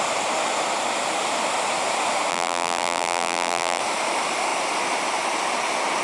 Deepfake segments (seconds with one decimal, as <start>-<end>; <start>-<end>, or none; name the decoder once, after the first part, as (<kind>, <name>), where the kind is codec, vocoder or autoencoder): 2.3-3.8 (vocoder, BigVGAN v2)